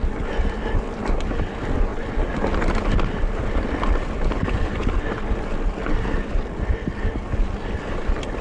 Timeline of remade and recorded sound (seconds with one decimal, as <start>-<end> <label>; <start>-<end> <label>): 0.0-8.4 recorded